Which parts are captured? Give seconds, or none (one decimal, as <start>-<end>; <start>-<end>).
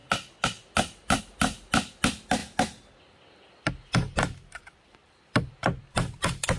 0.0-6.6